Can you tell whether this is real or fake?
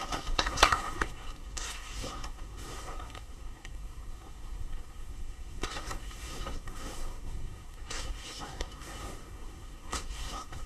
fake